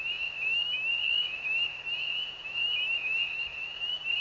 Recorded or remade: remade